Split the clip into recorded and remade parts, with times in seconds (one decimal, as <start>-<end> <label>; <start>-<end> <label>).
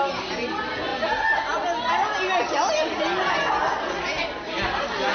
0.0-5.1 recorded